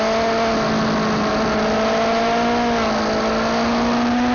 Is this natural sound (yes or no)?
yes